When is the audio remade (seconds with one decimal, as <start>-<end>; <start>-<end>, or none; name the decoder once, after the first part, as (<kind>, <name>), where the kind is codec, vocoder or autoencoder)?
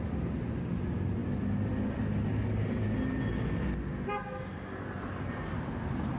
none